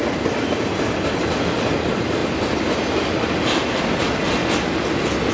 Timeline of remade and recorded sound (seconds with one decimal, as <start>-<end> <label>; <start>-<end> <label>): 0.0-5.3 recorded